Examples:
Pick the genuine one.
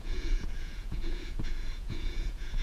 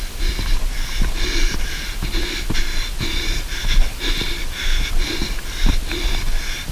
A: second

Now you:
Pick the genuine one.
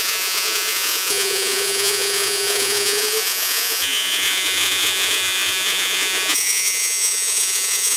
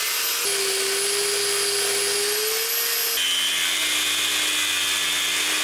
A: second